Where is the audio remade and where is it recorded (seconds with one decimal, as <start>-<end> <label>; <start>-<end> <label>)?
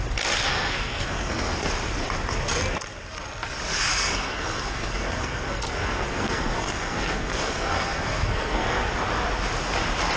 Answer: 0.0-0.5 recorded; 0.5-1.6 remade; 1.6-3.9 recorded; 3.9-8.9 remade; 8.9-10.2 recorded